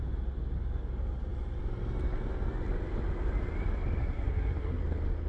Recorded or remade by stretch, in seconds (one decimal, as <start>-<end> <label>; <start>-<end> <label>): 0.0-4.0 recorded; 4.0-4.8 remade; 4.8-5.3 recorded